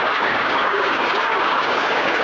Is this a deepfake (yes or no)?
yes